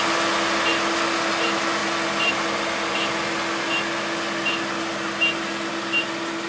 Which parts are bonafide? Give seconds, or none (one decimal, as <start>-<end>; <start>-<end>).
0.0-6.5